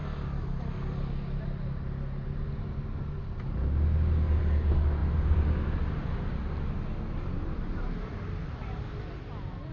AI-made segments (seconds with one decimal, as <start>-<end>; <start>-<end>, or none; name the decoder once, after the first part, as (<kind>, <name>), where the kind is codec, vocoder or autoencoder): none